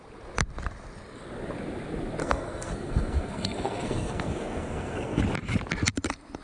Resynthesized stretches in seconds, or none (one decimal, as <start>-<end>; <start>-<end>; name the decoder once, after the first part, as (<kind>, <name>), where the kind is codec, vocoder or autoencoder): 2.2-5.2 (codec, SNAC)